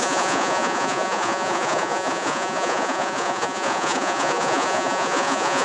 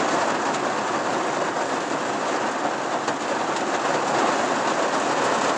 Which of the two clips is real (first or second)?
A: second